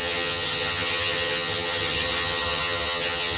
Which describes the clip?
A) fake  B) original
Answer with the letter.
A